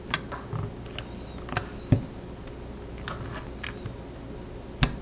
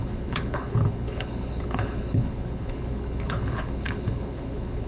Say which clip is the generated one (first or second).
second